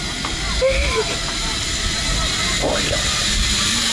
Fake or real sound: real